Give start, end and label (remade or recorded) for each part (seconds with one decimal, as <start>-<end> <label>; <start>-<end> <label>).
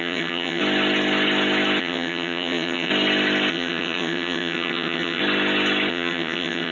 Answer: 0.0-0.6 remade; 0.6-1.8 recorded; 1.8-2.9 remade; 2.9-3.5 recorded; 3.5-5.2 remade; 5.2-5.9 recorded; 5.9-6.7 remade